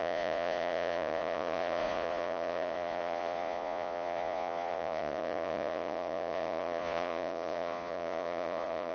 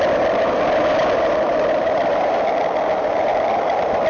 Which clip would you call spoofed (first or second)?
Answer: first